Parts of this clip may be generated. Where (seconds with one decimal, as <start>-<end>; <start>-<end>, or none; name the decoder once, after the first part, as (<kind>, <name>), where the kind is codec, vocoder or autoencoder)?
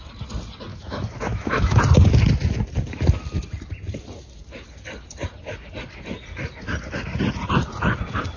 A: 0.7-1.8 (autoencoder, DAC-VAE)